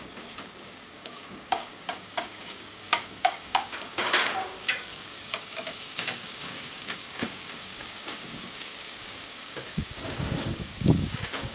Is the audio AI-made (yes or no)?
yes